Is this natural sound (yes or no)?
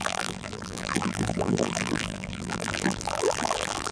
no